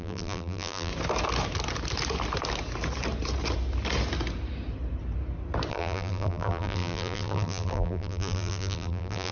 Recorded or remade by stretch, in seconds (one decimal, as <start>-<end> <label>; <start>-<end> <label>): 0.0-0.9 remade; 0.9-5.7 recorded; 5.7-9.3 remade